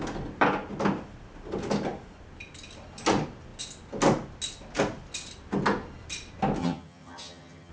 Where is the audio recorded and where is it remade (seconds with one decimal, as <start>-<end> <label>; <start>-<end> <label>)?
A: 0.0-6.6 recorded; 6.6-7.7 remade